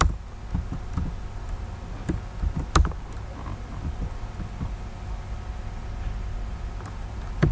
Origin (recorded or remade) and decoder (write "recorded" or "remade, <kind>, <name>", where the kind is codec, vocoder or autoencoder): recorded